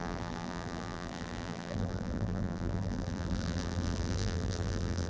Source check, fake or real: fake